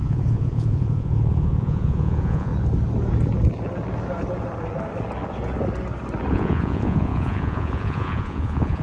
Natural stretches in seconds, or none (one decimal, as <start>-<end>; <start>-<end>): 2.5-6.3